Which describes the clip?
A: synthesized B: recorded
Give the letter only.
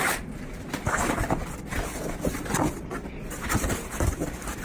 B